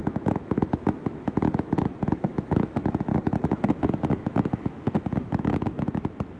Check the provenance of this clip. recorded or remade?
remade